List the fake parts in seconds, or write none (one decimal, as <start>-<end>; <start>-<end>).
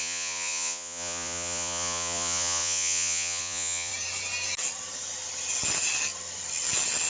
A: 0.0-3.9